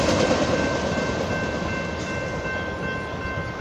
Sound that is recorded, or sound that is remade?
recorded